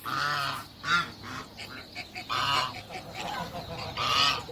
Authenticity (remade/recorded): recorded